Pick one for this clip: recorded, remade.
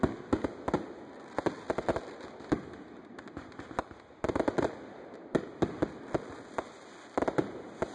recorded